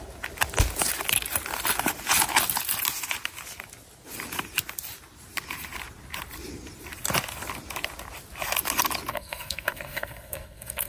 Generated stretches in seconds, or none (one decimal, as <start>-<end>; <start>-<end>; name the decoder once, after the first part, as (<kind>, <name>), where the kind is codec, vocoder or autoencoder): 9.1-10.9 (codec, SNAC)